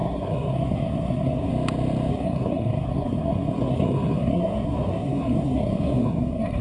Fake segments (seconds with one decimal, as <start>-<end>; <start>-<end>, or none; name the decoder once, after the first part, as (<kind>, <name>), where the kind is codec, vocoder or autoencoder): 0.0-1.5 (codec, SNAC); 2.1-6.6